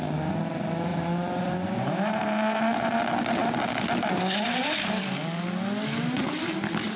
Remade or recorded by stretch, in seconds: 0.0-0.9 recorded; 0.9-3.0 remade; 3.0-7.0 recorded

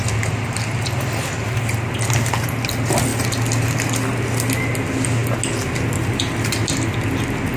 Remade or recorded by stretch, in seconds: 0.0-7.6 recorded

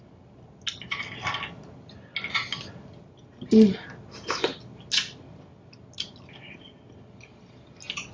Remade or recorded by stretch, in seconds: 0.0-8.1 recorded

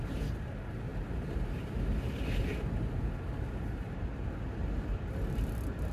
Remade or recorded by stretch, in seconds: 0.0-5.9 recorded

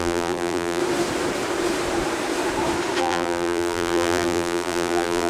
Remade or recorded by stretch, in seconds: 0.0-0.8 remade; 0.8-3.0 recorded; 3.0-5.3 remade

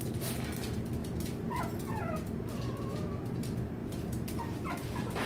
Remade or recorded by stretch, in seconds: 0.0-5.3 recorded